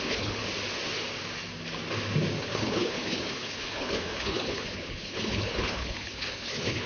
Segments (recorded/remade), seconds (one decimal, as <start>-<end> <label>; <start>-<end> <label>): 0.0-0.4 remade; 0.4-2.4 recorded; 2.4-6.9 remade